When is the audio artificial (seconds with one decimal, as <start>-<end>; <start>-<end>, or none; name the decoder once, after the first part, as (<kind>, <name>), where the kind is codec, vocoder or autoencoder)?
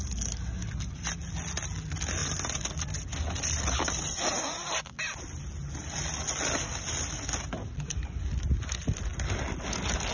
none